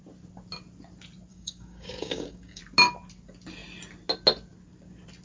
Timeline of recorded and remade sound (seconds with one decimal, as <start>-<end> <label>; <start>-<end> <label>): 0.0-1.3 recorded; 1.3-2.6 remade; 2.6-5.2 recorded